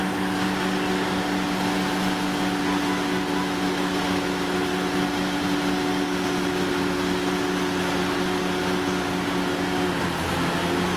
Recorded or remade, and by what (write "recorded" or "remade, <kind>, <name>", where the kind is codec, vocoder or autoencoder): recorded